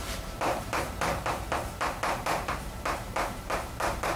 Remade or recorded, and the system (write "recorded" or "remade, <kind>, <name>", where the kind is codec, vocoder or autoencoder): remade, vocoder, BigVGAN v2